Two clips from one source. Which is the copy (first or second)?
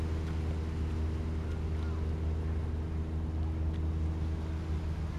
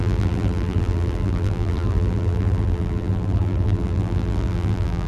second